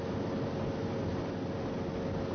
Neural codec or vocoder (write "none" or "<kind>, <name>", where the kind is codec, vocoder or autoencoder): none